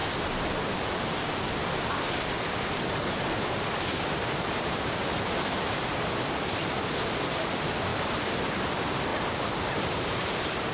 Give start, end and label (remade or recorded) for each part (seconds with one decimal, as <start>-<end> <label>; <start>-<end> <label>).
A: 0.0-5.2 remade; 5.2-9.1 recorded; 9.1-10.7 remade